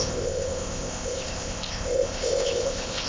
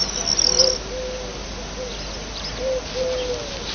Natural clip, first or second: second